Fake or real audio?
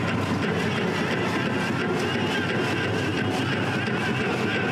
real